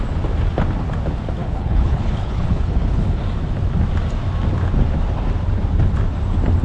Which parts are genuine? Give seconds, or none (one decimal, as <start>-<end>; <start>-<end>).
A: 0.0-1.4; 3.2-6.6